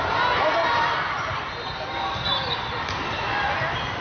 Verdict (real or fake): fake